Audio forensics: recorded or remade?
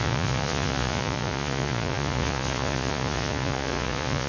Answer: remade